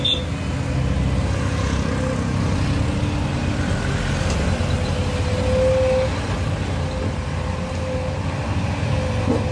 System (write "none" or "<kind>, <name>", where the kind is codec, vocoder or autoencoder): none